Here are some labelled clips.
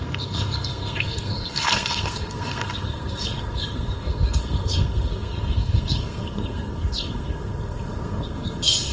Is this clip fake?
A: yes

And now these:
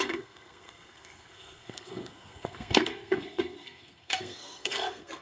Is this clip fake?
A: yes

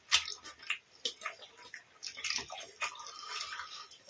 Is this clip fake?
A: no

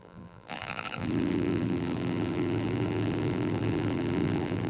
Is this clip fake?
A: yes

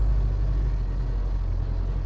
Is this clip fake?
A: no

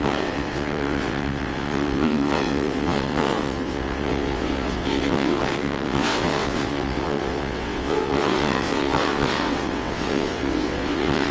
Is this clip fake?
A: yes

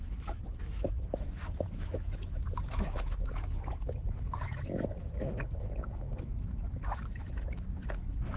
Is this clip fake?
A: yes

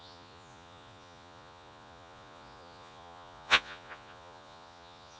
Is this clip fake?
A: yes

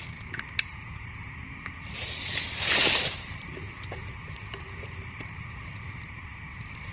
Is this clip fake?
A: yes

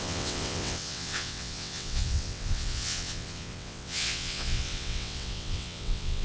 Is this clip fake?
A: yes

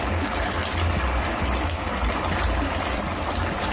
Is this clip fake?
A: no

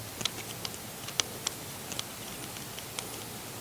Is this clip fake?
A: no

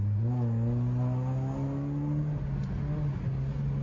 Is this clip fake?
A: no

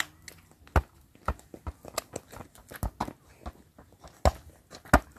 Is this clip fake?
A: no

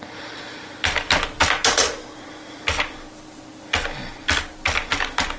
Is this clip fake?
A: no